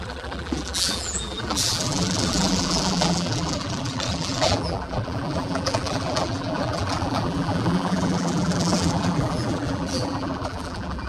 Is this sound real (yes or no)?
no